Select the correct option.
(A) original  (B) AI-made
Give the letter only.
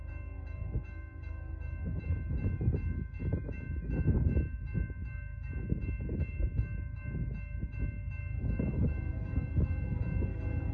B